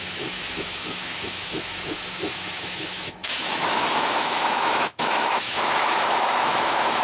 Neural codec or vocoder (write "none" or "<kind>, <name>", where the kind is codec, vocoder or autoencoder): autoencoder, DAC-VAE